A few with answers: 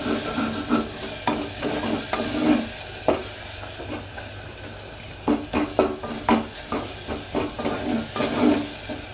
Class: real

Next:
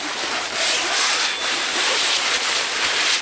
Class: real